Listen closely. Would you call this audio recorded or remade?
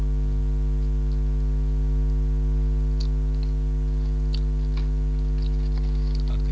recorded